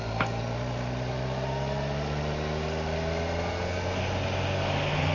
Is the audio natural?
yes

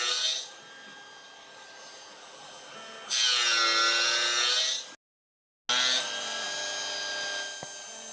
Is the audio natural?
yes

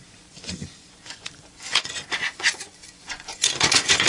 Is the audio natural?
no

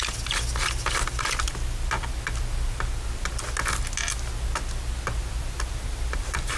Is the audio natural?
yes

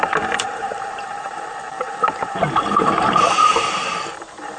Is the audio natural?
no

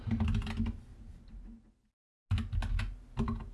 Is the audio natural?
yes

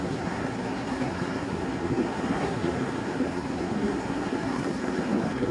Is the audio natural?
no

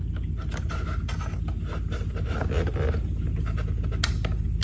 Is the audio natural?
yes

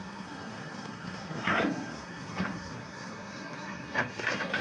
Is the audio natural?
no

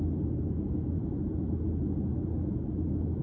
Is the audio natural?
yes